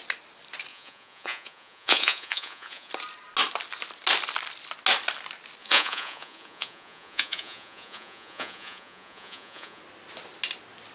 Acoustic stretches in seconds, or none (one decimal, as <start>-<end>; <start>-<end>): 0.0-0.7; 2.9-5.6; 9.8-10.9